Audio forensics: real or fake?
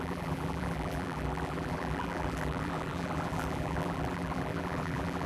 fake